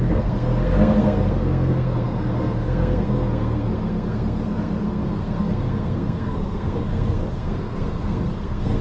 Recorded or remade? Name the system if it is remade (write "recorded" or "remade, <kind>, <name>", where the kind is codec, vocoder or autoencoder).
remade, codec, SNAC